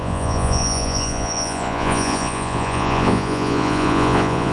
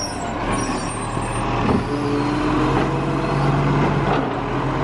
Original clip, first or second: second